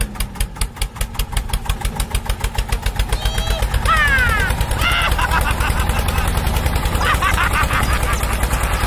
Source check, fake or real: real